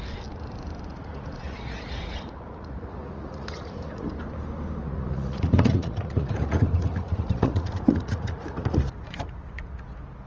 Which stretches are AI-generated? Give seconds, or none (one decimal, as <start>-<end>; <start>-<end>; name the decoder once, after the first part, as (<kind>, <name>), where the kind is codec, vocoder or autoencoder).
0.9-4.1 (vocoder, Vocos); 4.8-9.9